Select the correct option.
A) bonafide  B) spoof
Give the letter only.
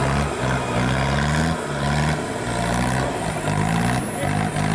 A